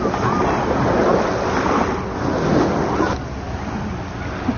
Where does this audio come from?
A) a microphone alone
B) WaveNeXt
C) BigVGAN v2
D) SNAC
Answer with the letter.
A